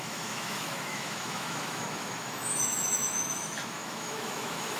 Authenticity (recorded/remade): remade